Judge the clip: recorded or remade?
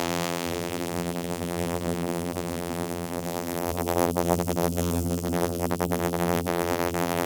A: remade